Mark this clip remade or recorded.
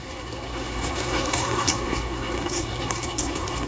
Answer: remade